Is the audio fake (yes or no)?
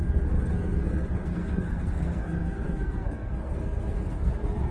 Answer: yes